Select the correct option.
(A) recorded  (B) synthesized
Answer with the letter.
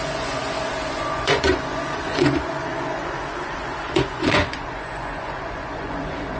B